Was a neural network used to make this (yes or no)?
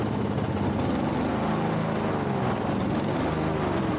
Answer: no